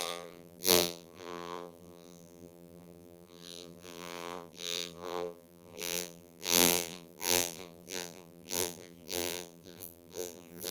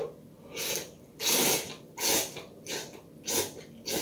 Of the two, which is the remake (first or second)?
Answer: first